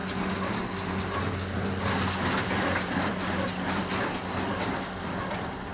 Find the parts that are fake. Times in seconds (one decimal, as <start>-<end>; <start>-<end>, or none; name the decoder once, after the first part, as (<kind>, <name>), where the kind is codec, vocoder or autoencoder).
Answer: none